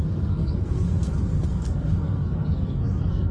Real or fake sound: fake